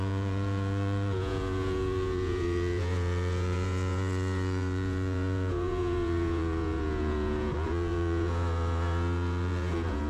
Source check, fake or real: fake